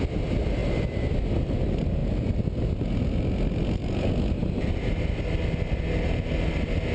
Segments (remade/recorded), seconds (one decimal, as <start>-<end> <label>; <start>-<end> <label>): 0.0-6.9 recorded